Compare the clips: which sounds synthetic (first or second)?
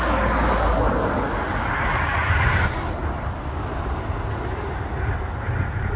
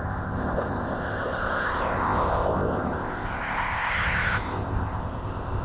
second